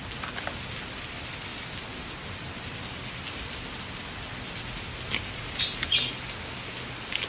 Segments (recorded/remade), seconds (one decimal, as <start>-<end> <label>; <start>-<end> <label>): 0.0-7.3 recorded